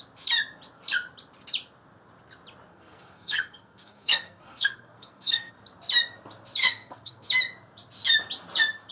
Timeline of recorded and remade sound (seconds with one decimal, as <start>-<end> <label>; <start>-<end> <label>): 0.0-2.7 recorded; 2.7-5.5 remade; 5.5-6.6 recorded; 6.6-7.3 remade; 7.3-8.9 recorded